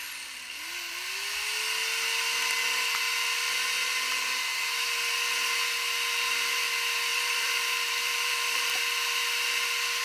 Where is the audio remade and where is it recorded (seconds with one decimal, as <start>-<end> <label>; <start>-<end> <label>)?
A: 0.0-7.1 recorded; 7.1-8.8 remade; 8.8-10.0 recorded